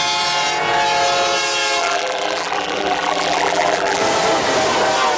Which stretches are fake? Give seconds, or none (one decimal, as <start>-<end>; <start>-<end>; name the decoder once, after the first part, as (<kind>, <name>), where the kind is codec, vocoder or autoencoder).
1.8-4.0 (vocoder, BigVGAN v2)